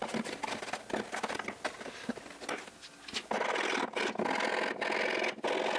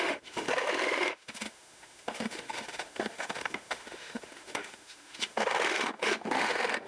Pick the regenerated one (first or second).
second